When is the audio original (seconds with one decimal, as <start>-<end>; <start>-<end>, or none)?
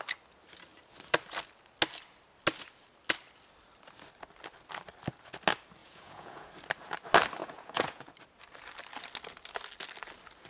0.0-5.8; 6.5-7.4; 8.1-10.5